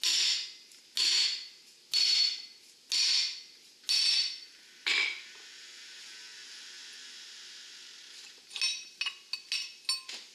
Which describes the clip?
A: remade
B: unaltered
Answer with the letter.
B